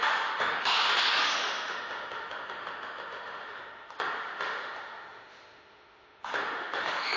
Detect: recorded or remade remade